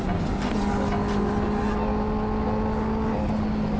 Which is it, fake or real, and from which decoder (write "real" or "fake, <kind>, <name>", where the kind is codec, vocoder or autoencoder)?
real